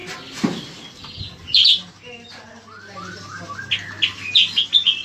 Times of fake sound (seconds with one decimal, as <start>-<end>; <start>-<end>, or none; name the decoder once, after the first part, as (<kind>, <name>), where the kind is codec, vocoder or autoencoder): none